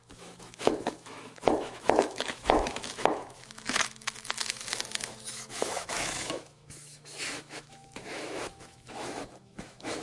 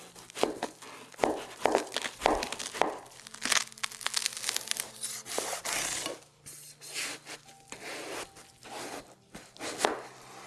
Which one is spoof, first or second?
first